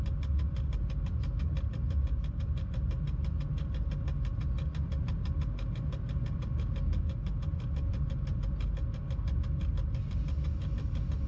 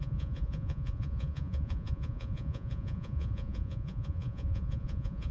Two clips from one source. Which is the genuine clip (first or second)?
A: first